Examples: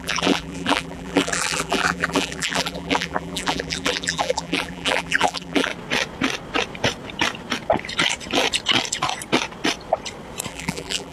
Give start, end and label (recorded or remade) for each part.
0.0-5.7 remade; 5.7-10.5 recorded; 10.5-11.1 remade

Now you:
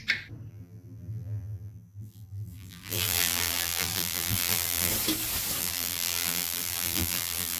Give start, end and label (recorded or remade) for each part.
0.0-0.5 recorded; 0.5-4.9 remade; 4.9-5.6 recorded; 5.6-7.6 remade